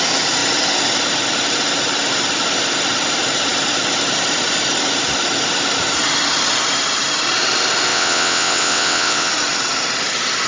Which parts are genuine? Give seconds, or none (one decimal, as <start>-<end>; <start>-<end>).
0.0-7.9; 9.3-10.5